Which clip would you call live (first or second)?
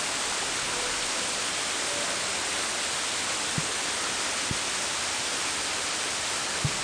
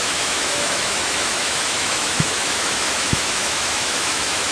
first